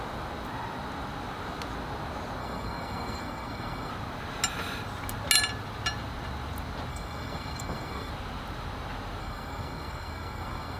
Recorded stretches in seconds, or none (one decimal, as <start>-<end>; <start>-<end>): 0.0-2.4; 3.9-6.9; 8.1-9.2